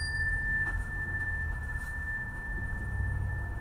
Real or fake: fake